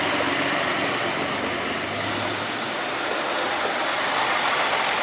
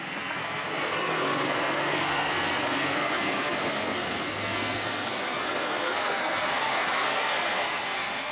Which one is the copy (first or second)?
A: second